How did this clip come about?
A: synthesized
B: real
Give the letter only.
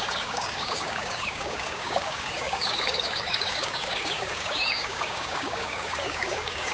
A